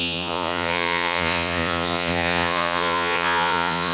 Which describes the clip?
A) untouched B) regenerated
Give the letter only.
B